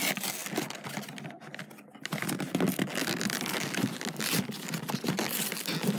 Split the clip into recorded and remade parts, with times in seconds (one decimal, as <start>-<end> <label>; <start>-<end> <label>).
0.0-6.0 recorded